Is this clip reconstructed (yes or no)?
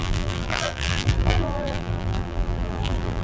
yes